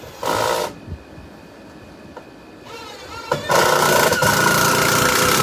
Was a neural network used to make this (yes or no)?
no